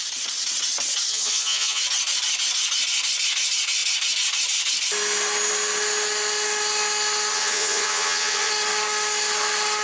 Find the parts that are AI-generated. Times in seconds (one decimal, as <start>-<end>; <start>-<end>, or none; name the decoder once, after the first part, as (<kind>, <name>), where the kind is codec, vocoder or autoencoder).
1.1-1.8 (vocoder, HiFi-GAN); 7.3-8.5